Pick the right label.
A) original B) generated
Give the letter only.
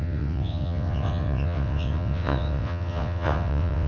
B